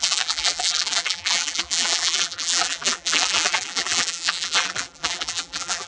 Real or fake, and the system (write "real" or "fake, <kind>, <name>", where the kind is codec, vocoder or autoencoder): fake, vocoder, BigVGAN v2